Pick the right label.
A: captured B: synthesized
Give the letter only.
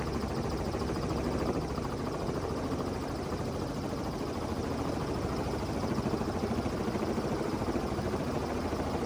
A